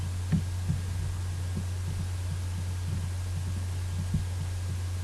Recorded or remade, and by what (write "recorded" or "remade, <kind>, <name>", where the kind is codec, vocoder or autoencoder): recorded